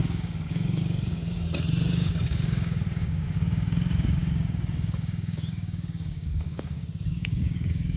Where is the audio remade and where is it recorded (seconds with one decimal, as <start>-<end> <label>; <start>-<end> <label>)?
0.0-8.0 remade